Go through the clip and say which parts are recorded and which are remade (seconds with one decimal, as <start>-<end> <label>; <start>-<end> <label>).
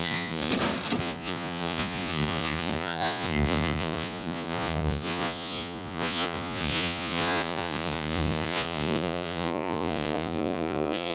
0.0-0.5 remade; 0.5-1.0 recorded; 1.0-11.1 remade